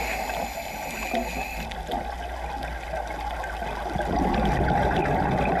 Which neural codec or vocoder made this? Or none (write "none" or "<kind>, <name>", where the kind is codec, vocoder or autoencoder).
none